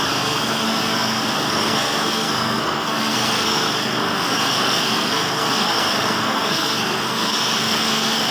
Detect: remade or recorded remade